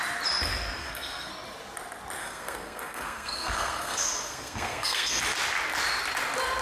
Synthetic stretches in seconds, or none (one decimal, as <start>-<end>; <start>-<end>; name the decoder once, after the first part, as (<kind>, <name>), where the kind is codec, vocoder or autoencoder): 0.8-1.3 (codec, SNAC); 2.2-5.2